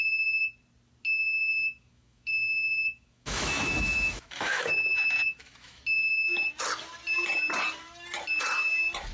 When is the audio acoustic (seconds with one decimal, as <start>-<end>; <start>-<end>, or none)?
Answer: 0.0-1.5; 5.8-9.1